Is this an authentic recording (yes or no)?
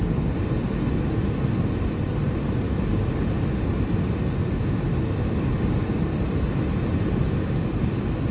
yes